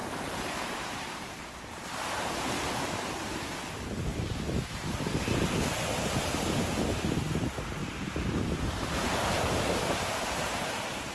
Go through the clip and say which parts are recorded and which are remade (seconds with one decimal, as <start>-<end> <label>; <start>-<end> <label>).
0.0-1.4 remade; 1.4-2.0 recorded; 2.0-4.1 remade; 4.1-7.3 recorded; 7.3-11.1 remade